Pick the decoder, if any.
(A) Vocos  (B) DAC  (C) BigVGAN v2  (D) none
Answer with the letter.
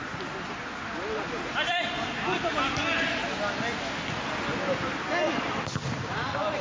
D